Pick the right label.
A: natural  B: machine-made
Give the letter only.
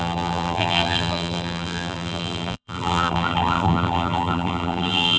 B